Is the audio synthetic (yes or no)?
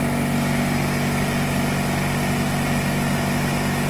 no